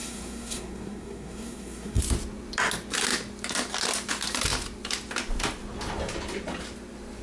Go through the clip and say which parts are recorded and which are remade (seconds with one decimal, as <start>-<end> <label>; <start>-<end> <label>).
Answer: 0.0-2.0 remade; 2.0-7.2 recorded